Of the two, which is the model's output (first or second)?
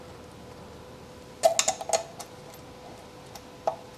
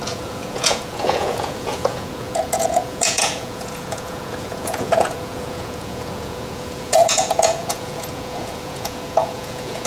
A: second